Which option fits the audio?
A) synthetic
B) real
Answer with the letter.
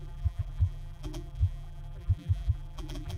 A